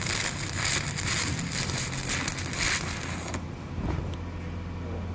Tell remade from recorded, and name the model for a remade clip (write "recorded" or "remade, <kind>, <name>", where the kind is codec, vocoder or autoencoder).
recorded